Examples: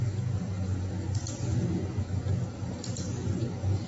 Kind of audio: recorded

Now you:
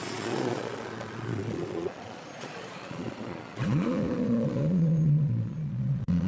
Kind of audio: remade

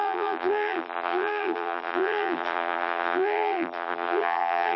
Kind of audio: remade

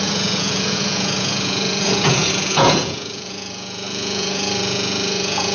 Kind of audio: remade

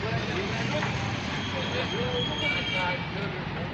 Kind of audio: recorded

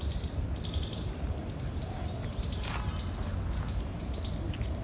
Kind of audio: recorded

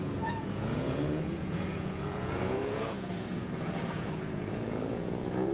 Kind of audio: remade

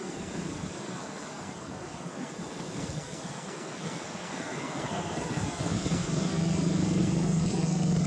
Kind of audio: remade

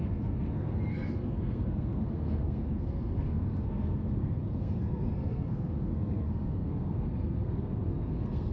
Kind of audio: remade